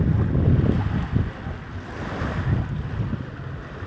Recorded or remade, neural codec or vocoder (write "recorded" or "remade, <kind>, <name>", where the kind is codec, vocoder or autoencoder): recorded